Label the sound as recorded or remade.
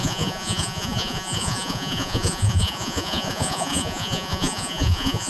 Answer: remade